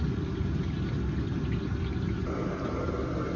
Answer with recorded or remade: recorded